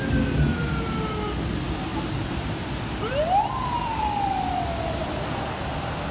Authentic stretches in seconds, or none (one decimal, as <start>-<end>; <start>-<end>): 0.0-6.1